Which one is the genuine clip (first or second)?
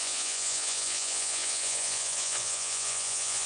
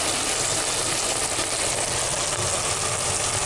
second